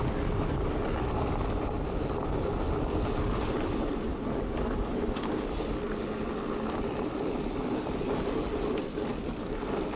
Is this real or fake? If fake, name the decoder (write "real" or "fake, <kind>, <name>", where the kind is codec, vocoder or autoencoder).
real